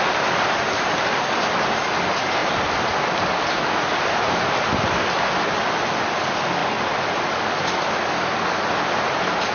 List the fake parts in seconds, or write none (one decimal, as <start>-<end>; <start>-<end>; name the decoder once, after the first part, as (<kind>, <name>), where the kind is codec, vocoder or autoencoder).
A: 0.0-2.4 (vocoder, BigVGAN v2); 5.5-6.6; 7.4-9.5